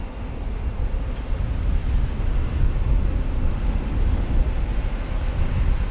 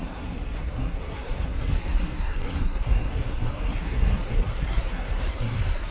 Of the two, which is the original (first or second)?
first